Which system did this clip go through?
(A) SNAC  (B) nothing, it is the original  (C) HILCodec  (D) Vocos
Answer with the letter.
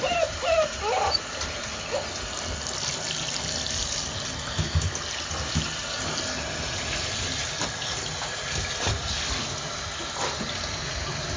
B